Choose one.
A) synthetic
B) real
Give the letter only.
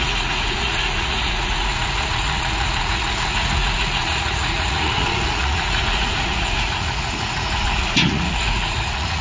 A